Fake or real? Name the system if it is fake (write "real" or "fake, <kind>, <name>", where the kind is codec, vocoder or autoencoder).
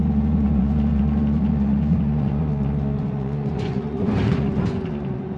fake, vocoder, Vocos